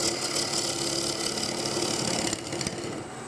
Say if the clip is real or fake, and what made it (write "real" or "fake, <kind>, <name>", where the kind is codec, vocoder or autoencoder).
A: real